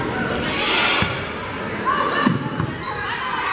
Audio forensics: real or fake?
real